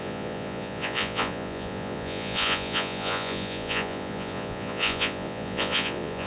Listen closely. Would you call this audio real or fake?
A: fake